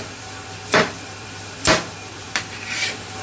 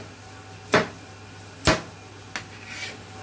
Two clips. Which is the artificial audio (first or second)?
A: first